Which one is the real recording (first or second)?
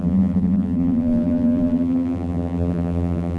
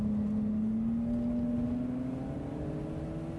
second